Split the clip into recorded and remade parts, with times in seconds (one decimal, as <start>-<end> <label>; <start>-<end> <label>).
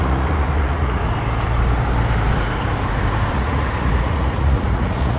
0.0-1.0 remade; 1.0-3.3 recorded; 3.3-5.2 remade